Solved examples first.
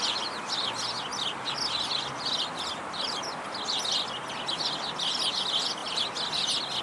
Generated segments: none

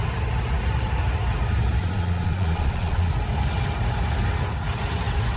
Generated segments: 1.8-3.1 (vocoder, Vocos)

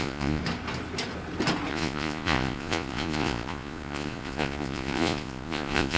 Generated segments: 0.0-0.4 (vocoder, Vocos); 1.7-6.0

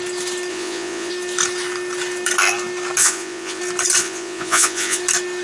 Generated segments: 0.5-1.1 (vocoder, Vocos); 3.0-3.6; 4.0-5.0

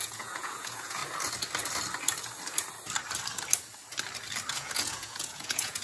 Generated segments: 0.0-1.0 (vocoder, Vocos); 4.5-5.8

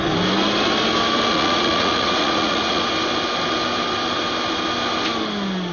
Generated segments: 1.3-2.9 (vocoder, Vocos)

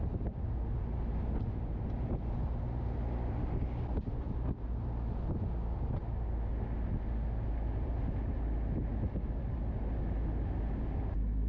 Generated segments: none

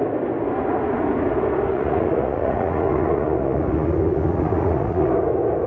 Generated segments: 1.7-5.1 (vocoder, Vocos)